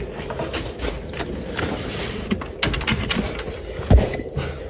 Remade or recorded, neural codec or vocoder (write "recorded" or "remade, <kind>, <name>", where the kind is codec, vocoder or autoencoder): recorded